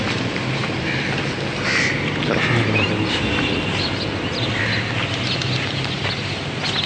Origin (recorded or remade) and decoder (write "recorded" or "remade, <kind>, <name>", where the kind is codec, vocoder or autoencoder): recorded